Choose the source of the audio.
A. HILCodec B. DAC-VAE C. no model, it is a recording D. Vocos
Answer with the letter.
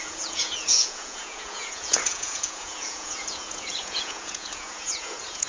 D